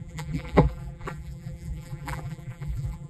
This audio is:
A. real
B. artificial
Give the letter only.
B